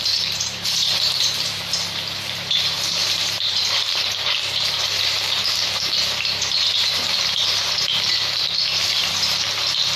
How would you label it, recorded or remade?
remade